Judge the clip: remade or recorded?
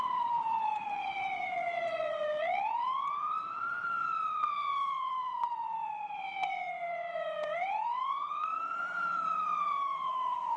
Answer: remade